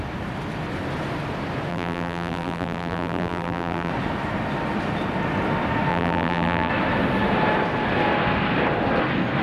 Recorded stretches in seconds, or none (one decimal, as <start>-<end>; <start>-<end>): 0.0-1.7; 3.9-5.9; 6.7-9.4